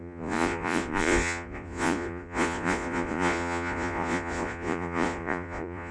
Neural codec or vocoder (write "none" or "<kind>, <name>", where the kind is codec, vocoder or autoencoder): vocoder, Vocos